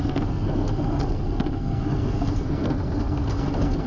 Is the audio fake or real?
fake